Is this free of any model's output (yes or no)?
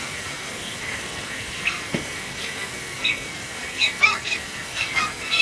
no